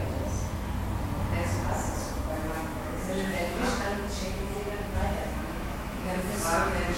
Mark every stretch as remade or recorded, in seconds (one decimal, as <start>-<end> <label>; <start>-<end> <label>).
0.0-2.7 recorded; 2.7-7.0 remade